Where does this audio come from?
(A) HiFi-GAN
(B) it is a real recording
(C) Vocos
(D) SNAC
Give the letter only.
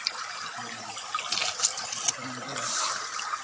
B